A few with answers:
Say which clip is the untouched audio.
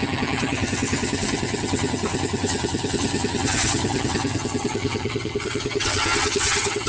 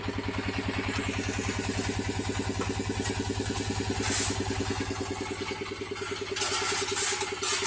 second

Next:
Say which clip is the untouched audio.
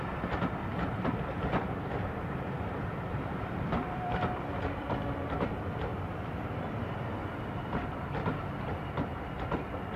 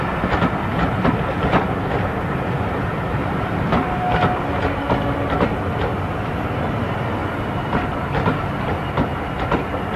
second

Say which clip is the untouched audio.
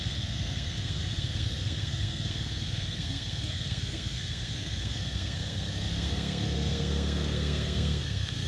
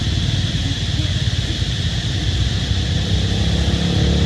second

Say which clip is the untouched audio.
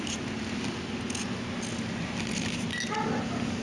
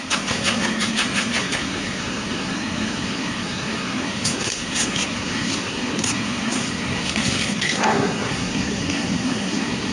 first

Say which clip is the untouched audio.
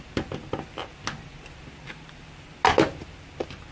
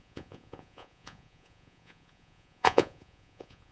first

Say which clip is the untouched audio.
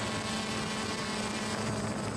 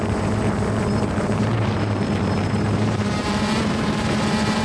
first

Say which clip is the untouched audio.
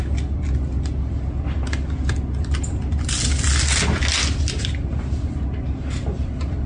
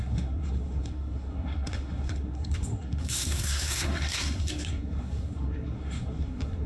first